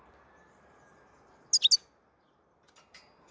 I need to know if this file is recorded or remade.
recorded